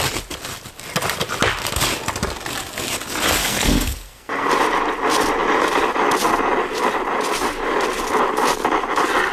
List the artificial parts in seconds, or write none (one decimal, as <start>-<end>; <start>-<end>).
3.4-4.5